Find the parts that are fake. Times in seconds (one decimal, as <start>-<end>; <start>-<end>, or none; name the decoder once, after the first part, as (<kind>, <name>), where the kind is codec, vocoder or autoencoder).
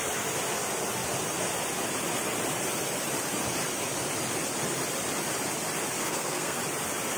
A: 6.0-6.6 (codec, SNAC)